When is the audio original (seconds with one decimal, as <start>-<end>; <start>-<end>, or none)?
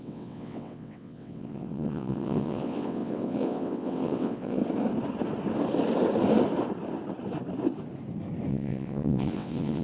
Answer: 4.6-8.5